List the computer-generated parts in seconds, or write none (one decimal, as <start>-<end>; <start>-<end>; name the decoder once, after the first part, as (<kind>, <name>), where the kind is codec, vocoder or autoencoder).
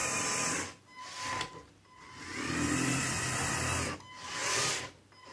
0.0-3.2 (vocoder, BigVGAN v2); 4.4-5.3